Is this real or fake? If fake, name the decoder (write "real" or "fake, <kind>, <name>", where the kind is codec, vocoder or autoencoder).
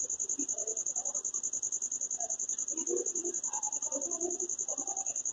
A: real